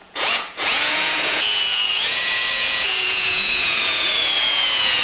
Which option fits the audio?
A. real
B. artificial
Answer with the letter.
B